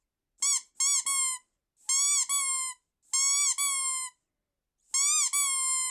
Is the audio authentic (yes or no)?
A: yes